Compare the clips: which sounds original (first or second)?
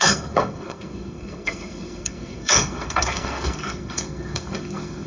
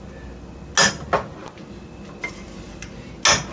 second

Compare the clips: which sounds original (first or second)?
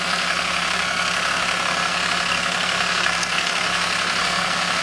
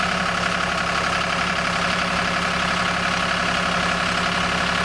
second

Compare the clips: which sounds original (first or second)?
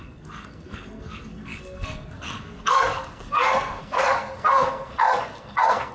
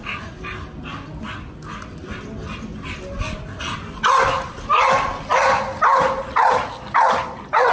second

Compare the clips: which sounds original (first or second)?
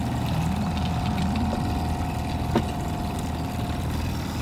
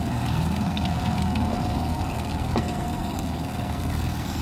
first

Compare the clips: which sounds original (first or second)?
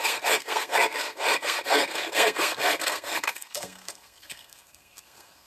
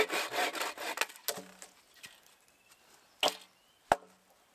second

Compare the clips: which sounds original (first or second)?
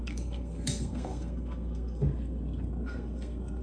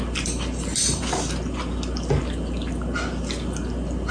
second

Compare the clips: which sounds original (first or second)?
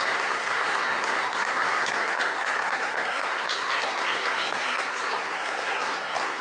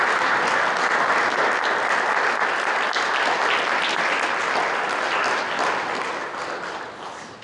second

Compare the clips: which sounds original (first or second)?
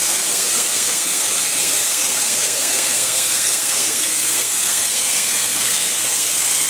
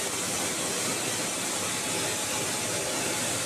second